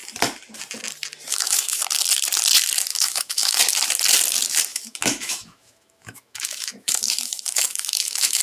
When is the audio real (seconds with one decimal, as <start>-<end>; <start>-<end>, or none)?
0.0-1.3; 1.8-2.9; 3.6-4.7